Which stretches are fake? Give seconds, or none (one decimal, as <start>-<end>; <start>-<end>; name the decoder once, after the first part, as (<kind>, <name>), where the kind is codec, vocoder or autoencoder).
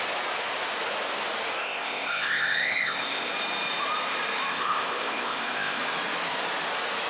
1.6-3.3 (codec, ZipCodec); 4.5-5.8